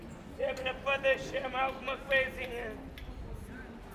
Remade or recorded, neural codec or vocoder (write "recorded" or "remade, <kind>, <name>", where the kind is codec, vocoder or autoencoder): recorded